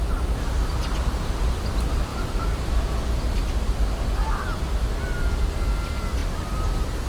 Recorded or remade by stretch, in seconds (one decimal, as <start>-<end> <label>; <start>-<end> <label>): 0.0-7.1 recorded